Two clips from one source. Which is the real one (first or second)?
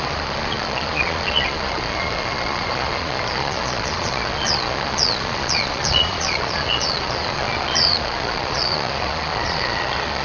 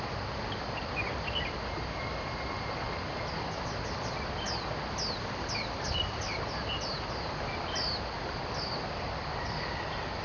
second